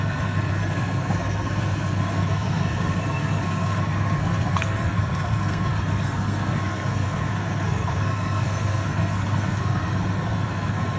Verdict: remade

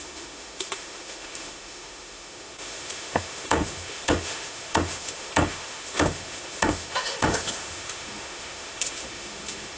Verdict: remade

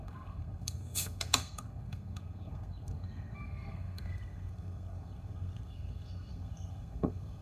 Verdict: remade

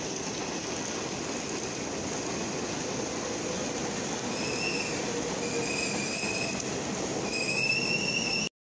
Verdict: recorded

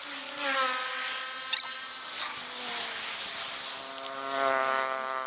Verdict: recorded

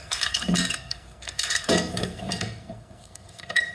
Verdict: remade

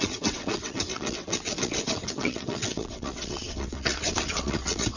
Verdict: remade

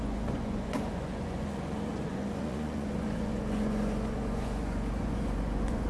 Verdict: remade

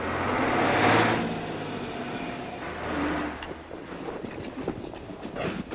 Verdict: recorded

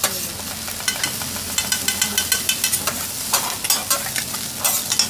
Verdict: recorded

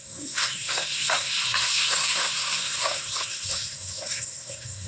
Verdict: remade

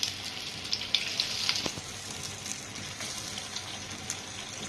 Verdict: recorded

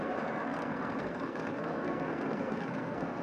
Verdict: remade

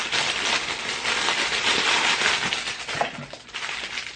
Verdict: recorded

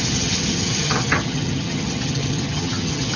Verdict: remade